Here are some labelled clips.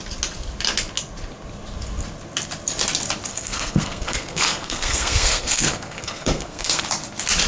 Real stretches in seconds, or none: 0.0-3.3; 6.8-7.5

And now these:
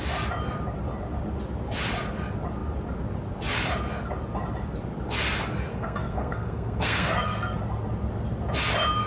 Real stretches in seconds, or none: 0.0-5.7; 7.6-9.1

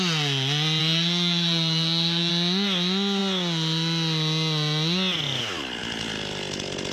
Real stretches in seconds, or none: 0.0-0.8; 2.3-6.9

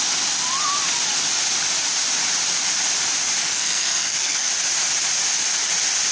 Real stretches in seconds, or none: 0.0-3.4; 4.5-6.1

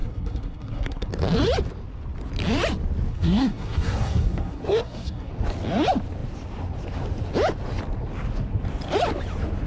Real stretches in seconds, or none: 1.1-3.1; 5.3-9.7

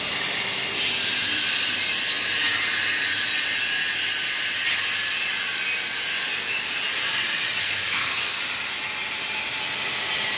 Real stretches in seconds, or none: 0.0-7.6; 8.4-10.4

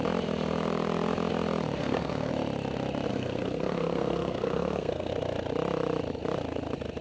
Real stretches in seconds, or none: 0.0-1.8; 2.3-3.1; 5.1-7.0